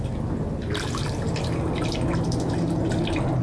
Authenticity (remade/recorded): recorded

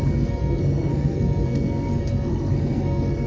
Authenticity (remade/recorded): remade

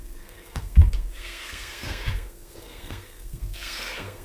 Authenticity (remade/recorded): remade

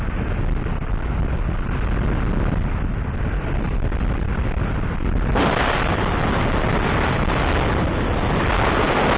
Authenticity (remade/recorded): recorded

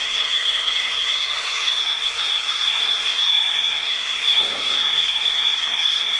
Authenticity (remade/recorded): remade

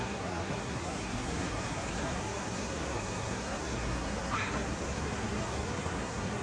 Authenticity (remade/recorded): remade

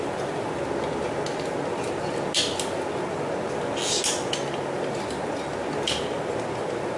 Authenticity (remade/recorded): recorded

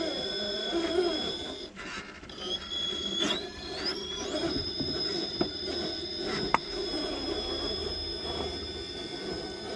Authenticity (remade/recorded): recorded